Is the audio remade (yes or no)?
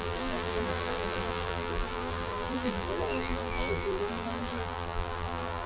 yes